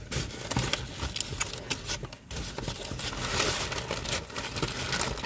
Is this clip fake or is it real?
real